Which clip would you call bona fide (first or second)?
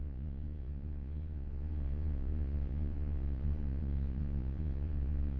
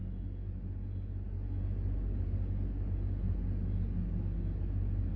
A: second